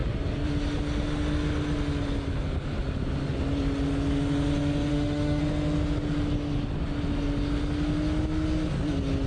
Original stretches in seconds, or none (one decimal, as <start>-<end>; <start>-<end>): 0.0-4.9; 5.4-9.3